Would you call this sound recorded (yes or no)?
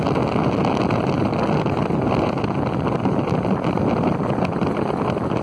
yes